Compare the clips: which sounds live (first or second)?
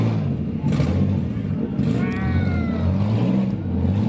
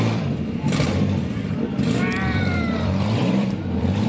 first